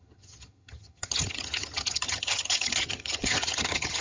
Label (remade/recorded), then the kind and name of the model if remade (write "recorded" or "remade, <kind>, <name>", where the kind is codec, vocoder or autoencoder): remade, vocoder, HiFi-GAN